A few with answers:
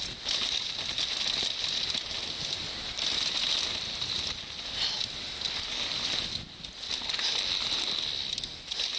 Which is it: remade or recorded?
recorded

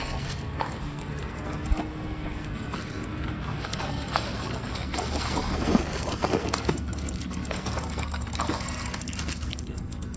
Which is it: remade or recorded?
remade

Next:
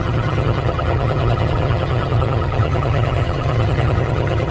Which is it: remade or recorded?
remade